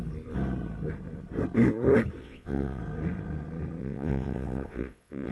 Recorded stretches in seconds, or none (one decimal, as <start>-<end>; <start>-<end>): 0.0-2.2; 2.8-3.8